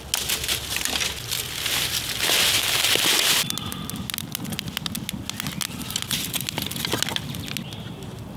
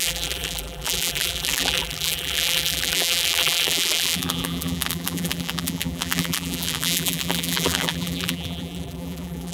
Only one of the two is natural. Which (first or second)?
first